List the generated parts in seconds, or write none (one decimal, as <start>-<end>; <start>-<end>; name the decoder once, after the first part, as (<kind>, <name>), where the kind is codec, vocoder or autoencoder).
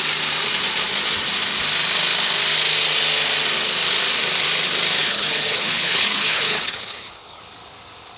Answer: 5.0-7.4 (codec, HILCodec)